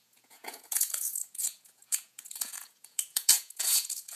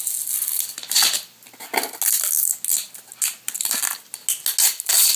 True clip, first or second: second